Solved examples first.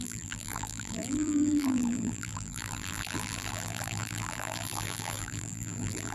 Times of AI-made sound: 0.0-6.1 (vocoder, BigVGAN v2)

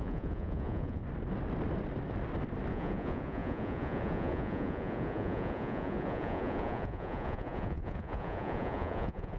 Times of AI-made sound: 0.0-1.0 (vocoder, Vocos); 2.7-9.4

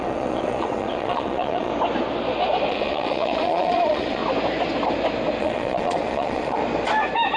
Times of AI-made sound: 0.0-1.7 (vocoder, Vocos); 2.7-4.2; 5.4-6.6